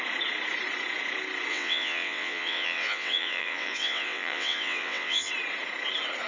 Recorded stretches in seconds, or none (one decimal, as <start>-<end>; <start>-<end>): 0.0-1.5; 5.3-6.3